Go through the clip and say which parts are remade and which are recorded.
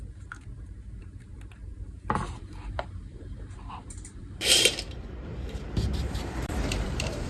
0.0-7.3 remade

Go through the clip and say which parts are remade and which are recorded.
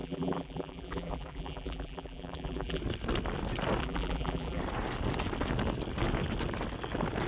0.0-2.8 remade; 2.8-3.8 recorded; 3.8-4.6 remade; 4.6-7.3 recorded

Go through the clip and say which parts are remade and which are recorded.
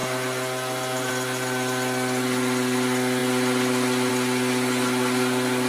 0.0-5.7 recorded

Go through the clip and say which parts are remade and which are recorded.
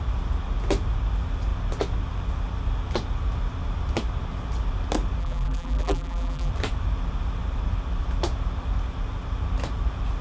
0.0-5.2 recorded; 5.2-6.5 remade; 6.5-10.2 recorded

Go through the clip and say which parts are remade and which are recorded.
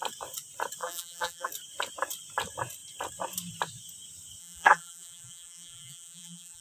0.0-0.8 recorded; 0.8-1.5 remade; 1.5-4.4 recorded; 4.4-6.6 remade